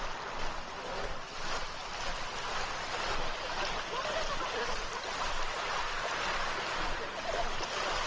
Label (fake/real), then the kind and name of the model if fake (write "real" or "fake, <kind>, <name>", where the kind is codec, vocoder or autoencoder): real